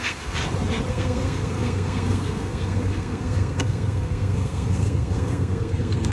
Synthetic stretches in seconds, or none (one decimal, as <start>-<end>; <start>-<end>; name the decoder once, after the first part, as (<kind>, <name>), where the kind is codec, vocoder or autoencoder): 0.0-0.4 (codec, SNAC); 0.9-6.1